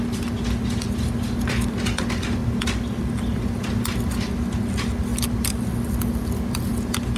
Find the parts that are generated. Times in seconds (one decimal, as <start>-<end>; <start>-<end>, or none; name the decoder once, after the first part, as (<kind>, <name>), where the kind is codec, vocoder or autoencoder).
none